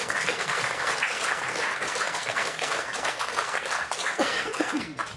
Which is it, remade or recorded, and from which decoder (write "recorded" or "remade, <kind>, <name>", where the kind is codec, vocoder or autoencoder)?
remade, codec, SNAC